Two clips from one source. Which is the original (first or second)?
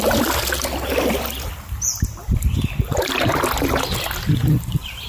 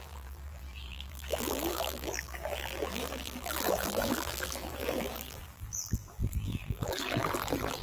first